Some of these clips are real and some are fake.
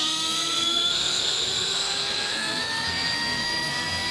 fake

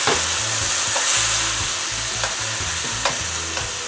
real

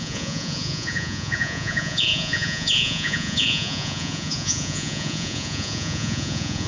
fake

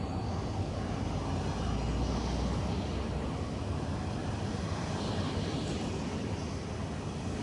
real